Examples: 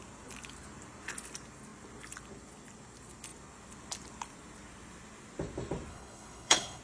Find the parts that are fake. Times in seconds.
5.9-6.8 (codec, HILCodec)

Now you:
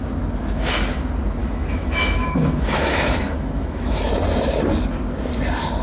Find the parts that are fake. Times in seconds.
1.4-4.1 (autoencoder, DAC-VAE)